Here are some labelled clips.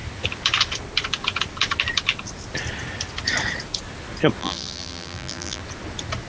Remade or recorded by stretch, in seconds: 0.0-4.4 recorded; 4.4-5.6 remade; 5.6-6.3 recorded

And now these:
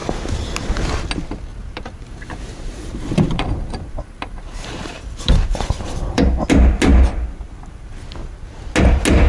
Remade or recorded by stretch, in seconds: 0.0-1.5 recorded; 1.5-6.2 remade; 6.2-9.3 recorded